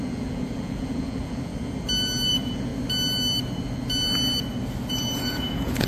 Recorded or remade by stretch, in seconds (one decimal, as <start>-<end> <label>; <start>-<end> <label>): 0.0-1.5 remade; 1.5-2.3 recorded; 2.3-2.7 remade; 2.7-4.9 recorded; 4.9-5.9 remade